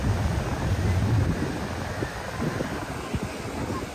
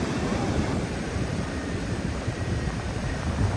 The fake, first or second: second